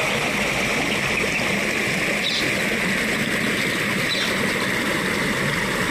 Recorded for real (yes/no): yes